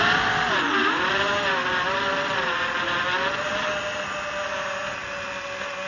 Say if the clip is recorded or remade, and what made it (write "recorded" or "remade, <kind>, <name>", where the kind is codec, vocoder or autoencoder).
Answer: recorded